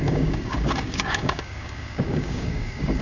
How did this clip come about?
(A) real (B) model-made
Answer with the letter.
B